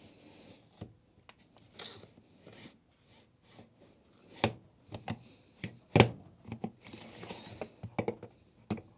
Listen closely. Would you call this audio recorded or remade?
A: recorded